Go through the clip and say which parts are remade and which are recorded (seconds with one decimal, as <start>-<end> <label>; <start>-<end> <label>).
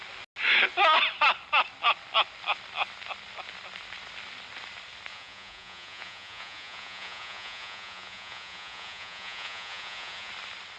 0.0-5.1 recorded; 5.1-10.3 remade; 10.3-10.8 recorded